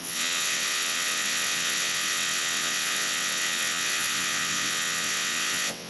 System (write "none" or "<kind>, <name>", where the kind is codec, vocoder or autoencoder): vocoder, WaveNeXt